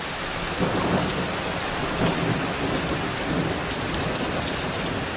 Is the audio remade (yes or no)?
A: no